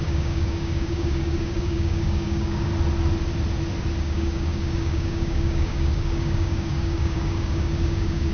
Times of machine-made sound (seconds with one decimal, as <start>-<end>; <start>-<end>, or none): 0.0-2.7; 4.0-8.3